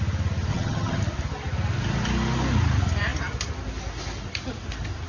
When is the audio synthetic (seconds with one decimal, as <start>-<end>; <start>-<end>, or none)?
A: 0.5-1.0